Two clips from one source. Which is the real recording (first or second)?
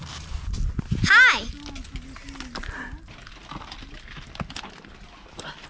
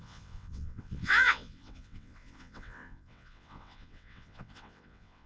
first